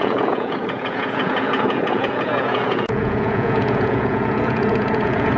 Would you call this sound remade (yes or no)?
yes